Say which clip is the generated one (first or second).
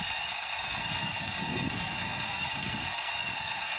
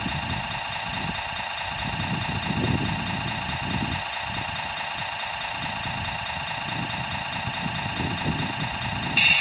first